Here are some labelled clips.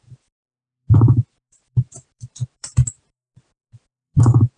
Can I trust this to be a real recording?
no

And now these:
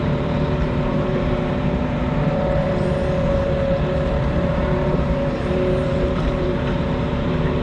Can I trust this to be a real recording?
no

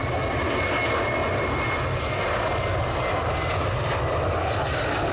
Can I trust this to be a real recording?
yes